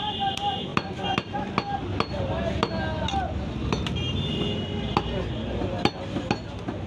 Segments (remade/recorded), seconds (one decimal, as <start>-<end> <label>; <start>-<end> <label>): 0.0-6.9 recorded